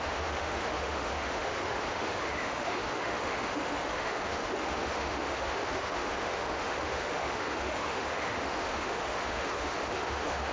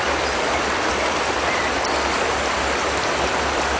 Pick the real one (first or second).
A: second